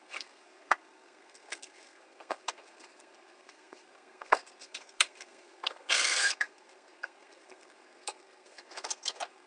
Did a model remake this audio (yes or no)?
yes